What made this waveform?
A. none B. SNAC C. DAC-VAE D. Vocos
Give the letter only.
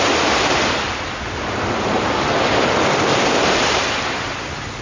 A